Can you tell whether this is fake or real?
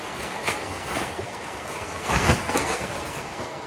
fake